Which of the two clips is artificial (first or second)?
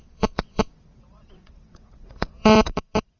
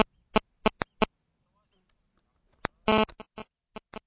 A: first